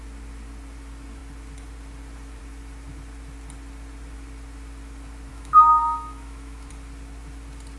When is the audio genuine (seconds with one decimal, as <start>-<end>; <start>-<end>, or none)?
0.0-5.3; 6.7-7.8